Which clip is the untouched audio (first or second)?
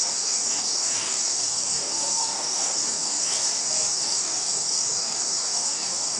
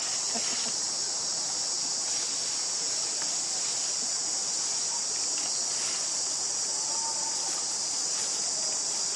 second